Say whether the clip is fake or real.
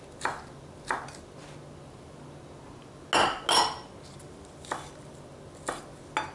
real